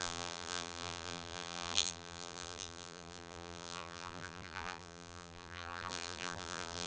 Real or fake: fake